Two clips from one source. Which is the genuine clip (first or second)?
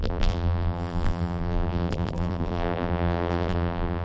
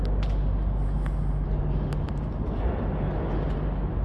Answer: second